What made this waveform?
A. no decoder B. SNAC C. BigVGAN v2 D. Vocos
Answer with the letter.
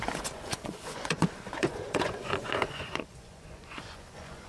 D